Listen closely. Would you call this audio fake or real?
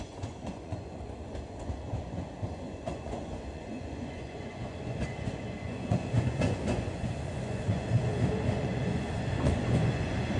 fake